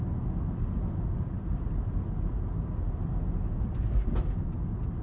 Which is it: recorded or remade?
recorded